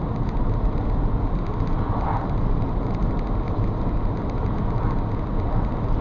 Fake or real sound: real